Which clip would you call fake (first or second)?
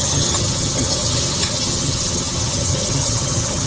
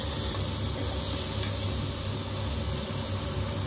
first